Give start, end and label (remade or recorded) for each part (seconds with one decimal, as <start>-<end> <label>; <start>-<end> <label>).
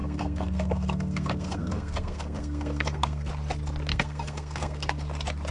0.0-3.3 remade; 3.3-3.9 recorded; 3.9-4.9 remade; 4.9-5.5 recorded